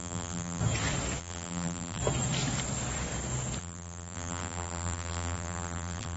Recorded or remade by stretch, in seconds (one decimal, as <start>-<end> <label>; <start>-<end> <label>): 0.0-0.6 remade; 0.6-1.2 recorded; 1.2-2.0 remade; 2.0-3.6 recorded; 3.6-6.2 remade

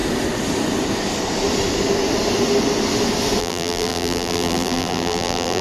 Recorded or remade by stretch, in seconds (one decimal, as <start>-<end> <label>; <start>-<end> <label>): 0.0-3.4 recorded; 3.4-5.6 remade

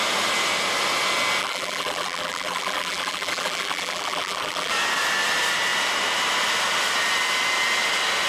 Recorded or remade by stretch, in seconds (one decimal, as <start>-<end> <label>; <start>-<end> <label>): 0.0-1.4 recorded; 1.4-4.7 remade; 4.7-8.3 recorded